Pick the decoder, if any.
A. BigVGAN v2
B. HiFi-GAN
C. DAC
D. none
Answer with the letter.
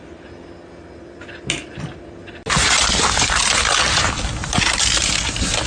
D